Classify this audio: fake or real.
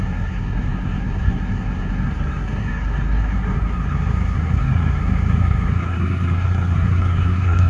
fake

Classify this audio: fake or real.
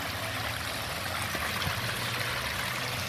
real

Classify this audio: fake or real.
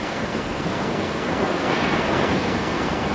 fake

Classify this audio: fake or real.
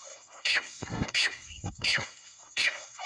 fake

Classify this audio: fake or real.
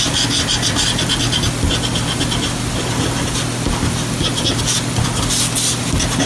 real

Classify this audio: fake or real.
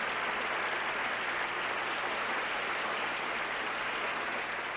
real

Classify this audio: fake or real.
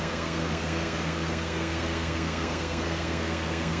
fake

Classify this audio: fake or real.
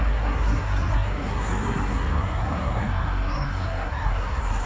fake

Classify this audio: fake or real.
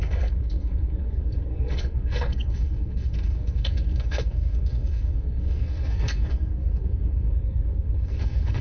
fake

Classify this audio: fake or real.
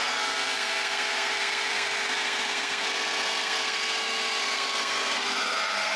fake